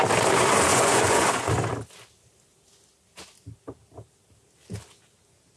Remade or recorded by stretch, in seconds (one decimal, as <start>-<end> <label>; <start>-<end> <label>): 0.0-0.7 recorded; 0.7-1.5 remade; 1.5-5.6 recorded